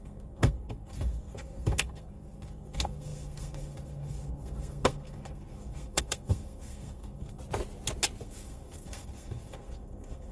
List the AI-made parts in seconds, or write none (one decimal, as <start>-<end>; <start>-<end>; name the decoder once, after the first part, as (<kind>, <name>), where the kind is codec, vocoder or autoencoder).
0.0-7.4 (codec, SNAC); 8.2-10.3